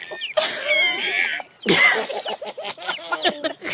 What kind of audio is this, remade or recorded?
recorded